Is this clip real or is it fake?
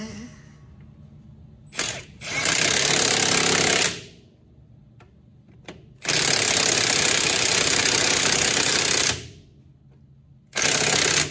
real